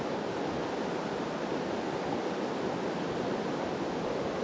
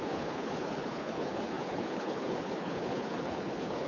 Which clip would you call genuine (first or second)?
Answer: first